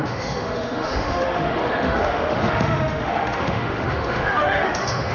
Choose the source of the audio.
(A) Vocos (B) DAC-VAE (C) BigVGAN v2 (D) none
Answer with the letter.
B